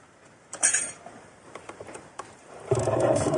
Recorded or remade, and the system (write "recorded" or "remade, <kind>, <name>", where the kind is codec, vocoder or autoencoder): remade, vocoder, BigVGAN v2